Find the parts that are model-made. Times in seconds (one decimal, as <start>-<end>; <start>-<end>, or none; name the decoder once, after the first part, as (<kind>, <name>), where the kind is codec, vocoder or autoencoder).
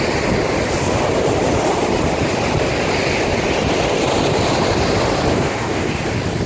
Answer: 5.3-6.0 (codec, DAC)